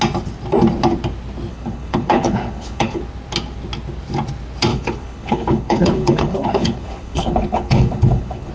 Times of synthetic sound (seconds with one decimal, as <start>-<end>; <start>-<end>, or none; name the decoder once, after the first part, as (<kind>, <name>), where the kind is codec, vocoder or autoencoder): 1.5-3.0 (codec, HILCodec); 4.7-8.5